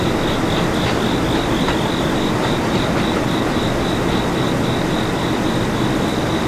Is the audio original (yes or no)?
yes